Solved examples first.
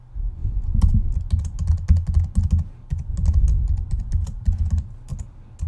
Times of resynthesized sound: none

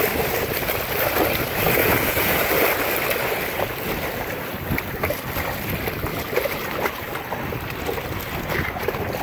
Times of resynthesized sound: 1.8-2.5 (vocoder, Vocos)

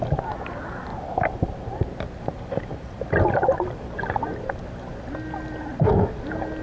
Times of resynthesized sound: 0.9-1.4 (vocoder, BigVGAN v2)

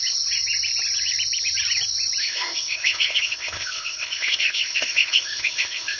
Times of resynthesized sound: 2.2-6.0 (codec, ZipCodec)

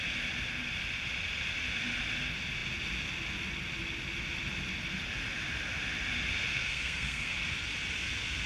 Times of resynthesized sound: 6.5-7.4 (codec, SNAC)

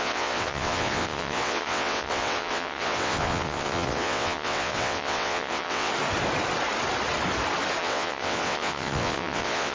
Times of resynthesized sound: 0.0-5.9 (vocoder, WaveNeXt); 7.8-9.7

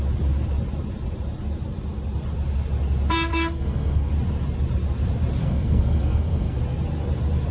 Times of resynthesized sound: 3.3-4.1 (codec, SNAC); 5.4-6.6